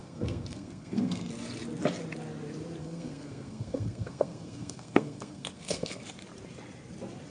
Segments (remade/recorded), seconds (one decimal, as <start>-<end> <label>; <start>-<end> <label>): 0.0-1.3 remade; 1.3-2.8 recorded; 2.8-6.0 remade; 6.0-7.3 recorded